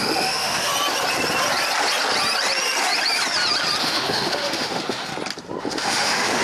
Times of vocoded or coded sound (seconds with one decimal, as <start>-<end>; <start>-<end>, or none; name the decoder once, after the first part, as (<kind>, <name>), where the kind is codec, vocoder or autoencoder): 0.0-0.7 (autoencoder, DAC-VAE); 3.8-5.1; 5.6-6.4